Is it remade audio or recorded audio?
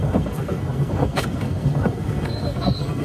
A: remade